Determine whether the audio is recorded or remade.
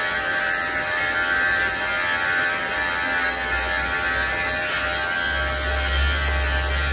recorded